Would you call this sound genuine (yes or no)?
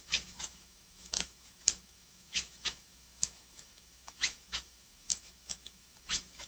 no